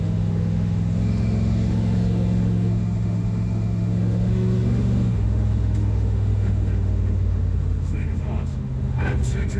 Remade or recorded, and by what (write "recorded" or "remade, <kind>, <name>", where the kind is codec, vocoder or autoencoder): remade, autoencoder, DAC-VAE